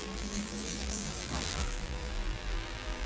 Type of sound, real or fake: fake